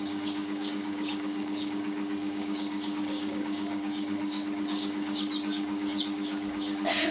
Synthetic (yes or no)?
yes